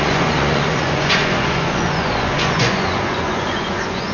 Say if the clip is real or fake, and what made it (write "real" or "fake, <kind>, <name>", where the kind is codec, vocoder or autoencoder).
fake, vocoder, Vocos